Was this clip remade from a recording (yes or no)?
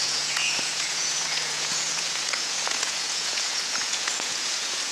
yes